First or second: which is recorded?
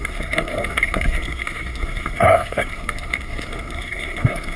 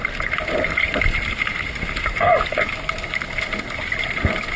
second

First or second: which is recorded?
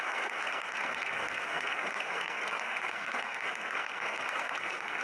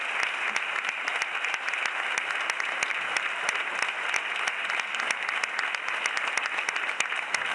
second